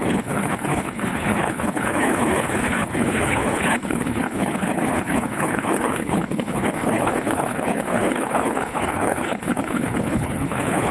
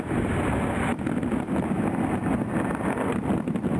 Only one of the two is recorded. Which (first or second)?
second